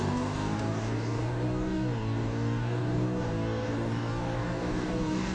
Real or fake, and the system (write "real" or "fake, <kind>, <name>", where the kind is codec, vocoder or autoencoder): fake, codec, DAC